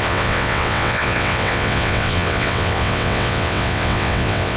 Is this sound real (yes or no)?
no